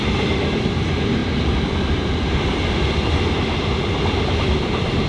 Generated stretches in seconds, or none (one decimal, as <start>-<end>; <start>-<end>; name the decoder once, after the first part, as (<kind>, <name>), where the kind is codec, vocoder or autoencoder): none